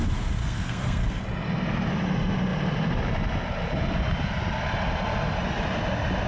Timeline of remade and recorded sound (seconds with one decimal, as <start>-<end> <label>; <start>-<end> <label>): 0.0-0.4 recorded; 0.4-1.2 remade; 1.2-6.3 recorded